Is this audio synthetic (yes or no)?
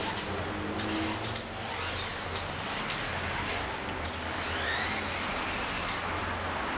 no